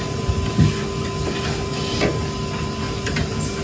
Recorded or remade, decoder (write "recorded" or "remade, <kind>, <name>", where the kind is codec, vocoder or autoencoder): recorded